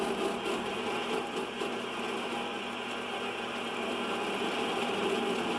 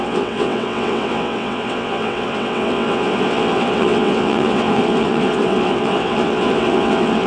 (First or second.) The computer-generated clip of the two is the second